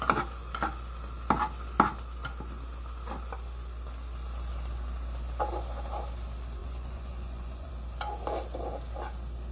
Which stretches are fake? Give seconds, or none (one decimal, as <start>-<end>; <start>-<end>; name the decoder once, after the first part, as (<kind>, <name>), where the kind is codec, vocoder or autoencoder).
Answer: 6.6-7.7 (vocoder, Vocos)